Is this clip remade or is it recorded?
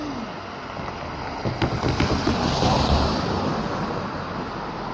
recorded